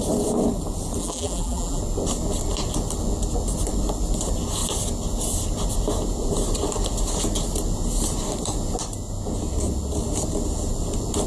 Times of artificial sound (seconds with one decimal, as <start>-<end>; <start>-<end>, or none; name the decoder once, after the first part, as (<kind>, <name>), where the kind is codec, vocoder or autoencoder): 1.0-1.8 (vocoder, BigVGAN v2)